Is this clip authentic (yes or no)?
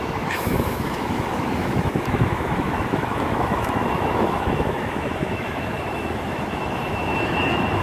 no